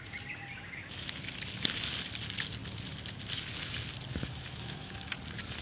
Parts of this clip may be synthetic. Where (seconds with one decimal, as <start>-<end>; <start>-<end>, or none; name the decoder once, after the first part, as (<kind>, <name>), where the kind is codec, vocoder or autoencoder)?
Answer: 0.5-1.2 (autoencoder, DAC-VAE); 4.1-5.1